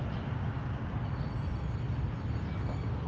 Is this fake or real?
real